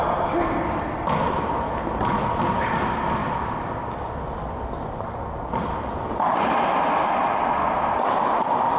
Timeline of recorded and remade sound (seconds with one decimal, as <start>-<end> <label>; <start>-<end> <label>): 0.0-7.6 recorded; 7.6-8.8 remade